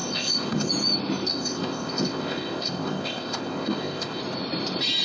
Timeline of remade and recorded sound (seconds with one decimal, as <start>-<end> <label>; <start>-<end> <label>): 0.0-0.7 remade; 0.7-1.3 recorded; 1.3-4.2 remade; 4.2-5.0 recorded